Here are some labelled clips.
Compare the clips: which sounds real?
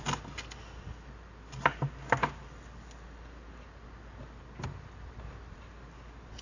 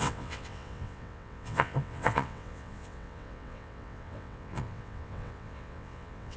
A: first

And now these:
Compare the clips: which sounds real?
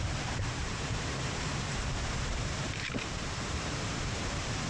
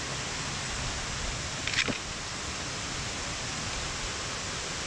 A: second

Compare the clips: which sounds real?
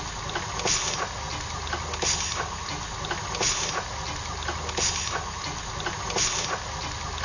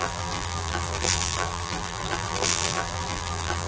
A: first